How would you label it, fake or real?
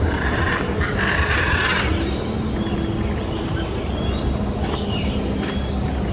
fake